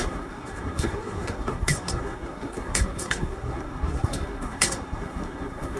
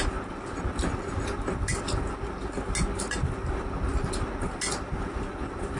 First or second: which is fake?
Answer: first